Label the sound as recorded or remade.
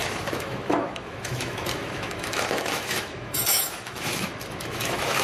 remade